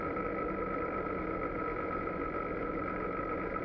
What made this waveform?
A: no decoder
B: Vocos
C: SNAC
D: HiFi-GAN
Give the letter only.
A